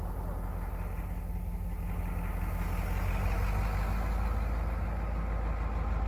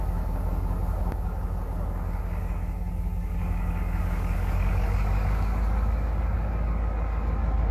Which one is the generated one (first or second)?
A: second